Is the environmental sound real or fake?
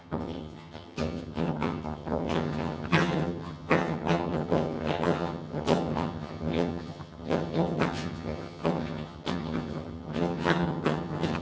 fake